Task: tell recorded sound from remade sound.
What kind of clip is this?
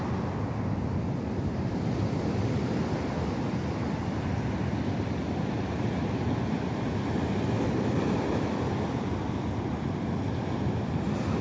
recorded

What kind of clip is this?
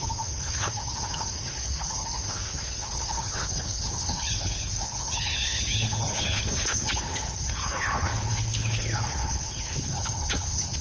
remade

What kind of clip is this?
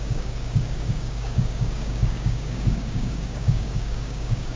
remade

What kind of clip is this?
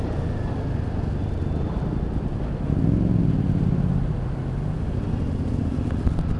recorded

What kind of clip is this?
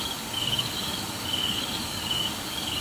remade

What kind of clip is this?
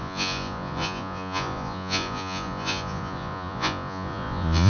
remade